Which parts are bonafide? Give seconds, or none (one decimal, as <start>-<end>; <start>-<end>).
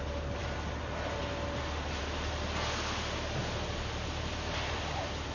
0.0-5.3